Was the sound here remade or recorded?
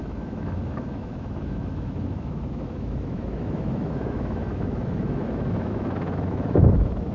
remade